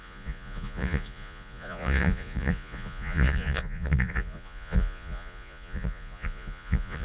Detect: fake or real fake